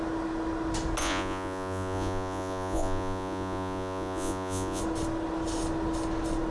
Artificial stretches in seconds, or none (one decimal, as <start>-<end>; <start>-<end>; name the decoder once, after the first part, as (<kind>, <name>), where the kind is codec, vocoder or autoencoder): 1.0-4.8 (vocoder, Vocos)

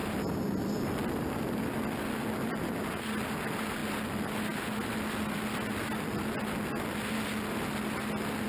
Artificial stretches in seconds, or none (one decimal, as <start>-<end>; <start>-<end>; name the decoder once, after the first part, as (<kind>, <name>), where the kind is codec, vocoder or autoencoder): none

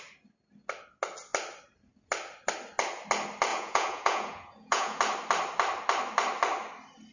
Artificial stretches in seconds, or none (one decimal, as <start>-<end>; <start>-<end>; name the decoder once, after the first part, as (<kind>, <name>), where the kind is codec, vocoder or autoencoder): 3.5-5.0 (vocoder, Vocos)

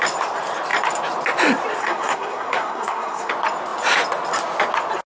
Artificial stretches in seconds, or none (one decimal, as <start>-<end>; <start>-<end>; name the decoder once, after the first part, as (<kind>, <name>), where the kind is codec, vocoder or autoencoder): 1.8-3.3 (codec, SNAC)